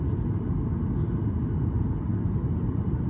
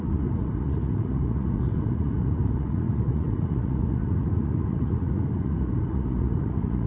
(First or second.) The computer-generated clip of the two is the second